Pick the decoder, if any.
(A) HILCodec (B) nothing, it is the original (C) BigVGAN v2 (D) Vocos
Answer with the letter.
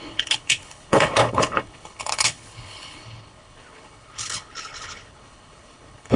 A